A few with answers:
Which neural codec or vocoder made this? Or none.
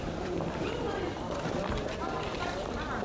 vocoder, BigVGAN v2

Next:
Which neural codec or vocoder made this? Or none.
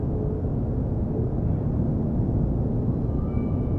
none